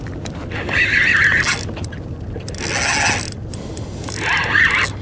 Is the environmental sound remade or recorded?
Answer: recorded